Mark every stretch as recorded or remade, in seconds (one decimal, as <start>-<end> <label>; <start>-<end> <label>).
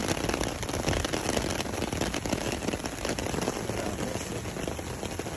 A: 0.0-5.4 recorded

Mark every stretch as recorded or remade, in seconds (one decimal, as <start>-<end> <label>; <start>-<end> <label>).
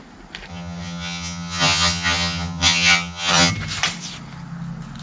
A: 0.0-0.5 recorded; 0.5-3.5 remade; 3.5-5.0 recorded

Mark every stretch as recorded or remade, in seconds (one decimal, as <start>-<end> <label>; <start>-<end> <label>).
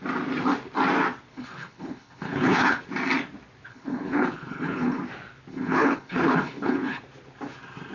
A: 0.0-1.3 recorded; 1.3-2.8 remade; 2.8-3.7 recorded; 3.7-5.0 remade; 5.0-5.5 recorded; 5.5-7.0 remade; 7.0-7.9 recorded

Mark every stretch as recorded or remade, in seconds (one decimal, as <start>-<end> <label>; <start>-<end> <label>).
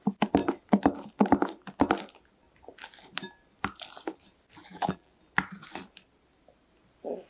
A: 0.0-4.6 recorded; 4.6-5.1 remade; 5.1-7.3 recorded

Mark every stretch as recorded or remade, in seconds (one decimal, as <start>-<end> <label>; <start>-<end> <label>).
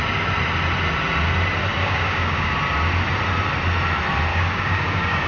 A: 0.0-1.8 recorded; 1.8-2.5 remade; 2.5-4.3 recorded; 4.3-5.3 remade